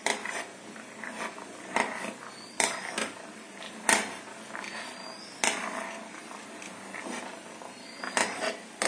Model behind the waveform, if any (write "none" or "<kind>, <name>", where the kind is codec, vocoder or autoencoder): vocoder, BigVGAN v2